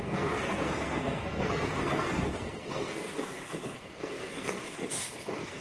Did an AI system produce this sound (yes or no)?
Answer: yes